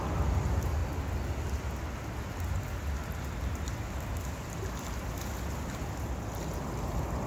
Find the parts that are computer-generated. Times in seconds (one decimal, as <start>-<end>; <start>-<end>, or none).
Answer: none